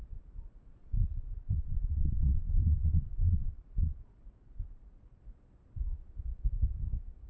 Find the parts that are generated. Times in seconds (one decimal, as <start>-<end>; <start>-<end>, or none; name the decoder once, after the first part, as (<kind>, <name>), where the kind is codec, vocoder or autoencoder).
0.8-5.2 (vocoder, Vocos)